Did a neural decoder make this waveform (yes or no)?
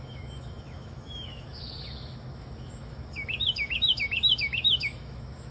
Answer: yes